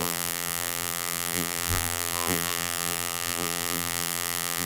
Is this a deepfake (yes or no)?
yes